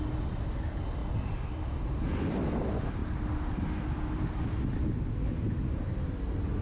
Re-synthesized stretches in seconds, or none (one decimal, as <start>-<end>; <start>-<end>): 1.0-1.6